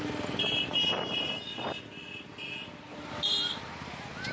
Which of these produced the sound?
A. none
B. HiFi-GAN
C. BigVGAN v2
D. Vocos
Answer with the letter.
A